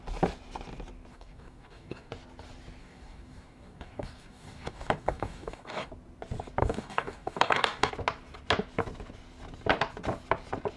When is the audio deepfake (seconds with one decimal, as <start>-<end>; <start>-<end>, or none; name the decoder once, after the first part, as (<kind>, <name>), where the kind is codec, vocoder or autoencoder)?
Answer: 1.1-2.1 (codec, DAC); 2.8-5.9; 6.6-7.9